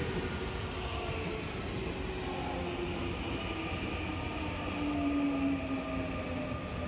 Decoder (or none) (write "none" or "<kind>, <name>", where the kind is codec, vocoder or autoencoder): none